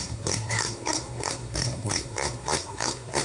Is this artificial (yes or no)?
yes